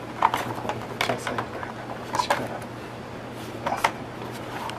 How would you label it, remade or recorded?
recorded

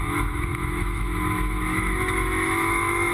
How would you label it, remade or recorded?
remade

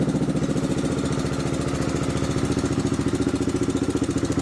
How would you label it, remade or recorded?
recorded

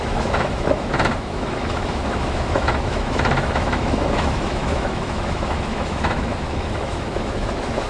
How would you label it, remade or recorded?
remade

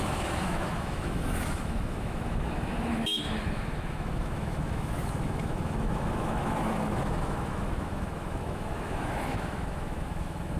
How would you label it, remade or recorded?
remade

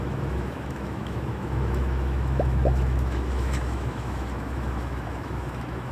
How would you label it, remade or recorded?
remade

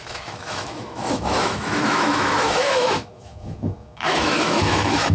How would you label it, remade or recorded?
remade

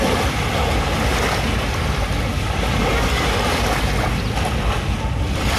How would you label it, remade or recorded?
recorded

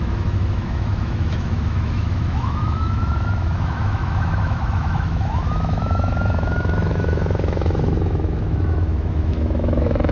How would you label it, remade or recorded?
remade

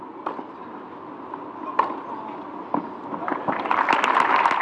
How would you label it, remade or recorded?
recorded